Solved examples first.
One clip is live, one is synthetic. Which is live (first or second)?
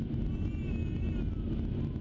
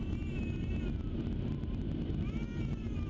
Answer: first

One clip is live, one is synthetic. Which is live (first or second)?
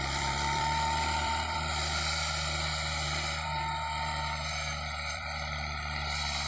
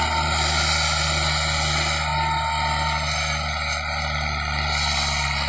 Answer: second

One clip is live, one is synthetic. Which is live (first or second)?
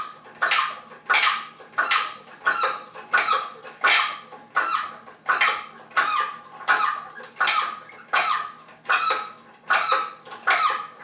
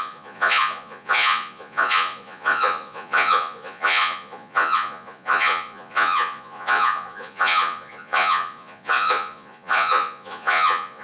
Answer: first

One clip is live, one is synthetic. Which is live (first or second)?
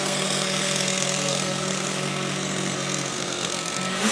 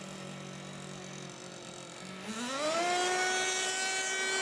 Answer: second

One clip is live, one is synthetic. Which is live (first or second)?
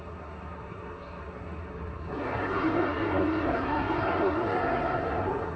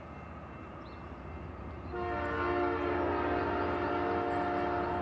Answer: second